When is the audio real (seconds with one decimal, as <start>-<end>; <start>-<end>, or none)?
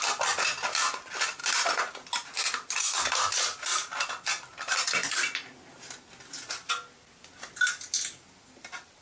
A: 0.0-9.0